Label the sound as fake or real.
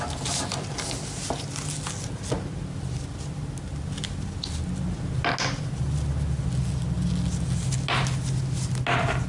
real